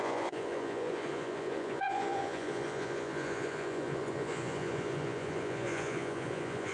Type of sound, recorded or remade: remade